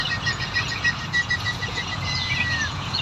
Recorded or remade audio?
remade